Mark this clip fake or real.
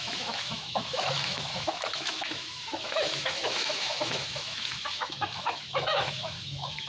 fake